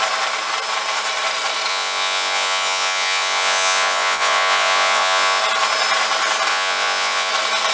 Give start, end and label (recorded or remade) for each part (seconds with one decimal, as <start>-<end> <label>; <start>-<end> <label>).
0.0-1.7 recorded; 1.7-5.4 remade; 5.4-6.5 recorded; 6.5-7.3 remade; 7.3-7.7 recorded